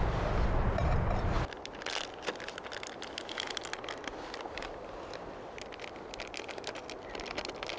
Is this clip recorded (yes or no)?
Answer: yes